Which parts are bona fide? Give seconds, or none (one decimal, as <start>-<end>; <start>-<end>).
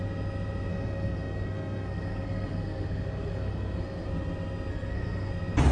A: 0.0-0.7; 4.1-4.7; 5.3-5.7